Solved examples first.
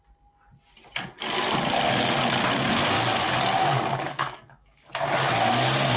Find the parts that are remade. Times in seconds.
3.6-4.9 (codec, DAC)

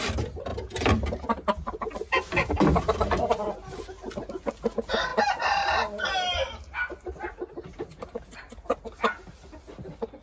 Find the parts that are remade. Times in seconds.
none

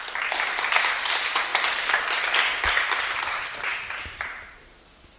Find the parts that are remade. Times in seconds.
none

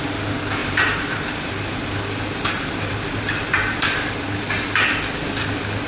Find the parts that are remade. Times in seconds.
0.6-4.1 (vocoder, BigVGAN v2)